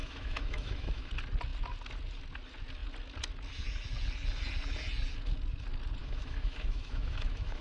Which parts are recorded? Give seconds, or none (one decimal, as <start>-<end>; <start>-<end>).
1.1-6.0